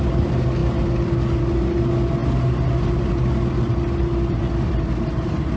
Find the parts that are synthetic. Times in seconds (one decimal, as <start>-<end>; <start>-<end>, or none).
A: none